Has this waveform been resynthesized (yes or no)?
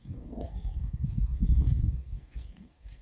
yes